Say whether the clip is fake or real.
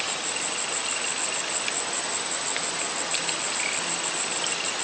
real